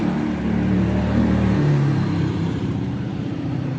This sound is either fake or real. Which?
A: fake